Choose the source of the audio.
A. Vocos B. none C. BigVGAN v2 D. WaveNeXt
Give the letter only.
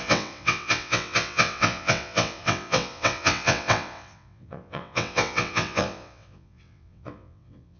D